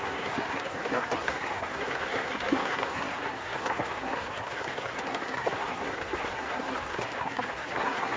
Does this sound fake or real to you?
fake